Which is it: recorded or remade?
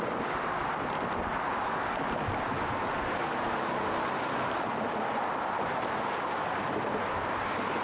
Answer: recorded